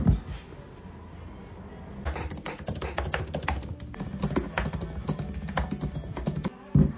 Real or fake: real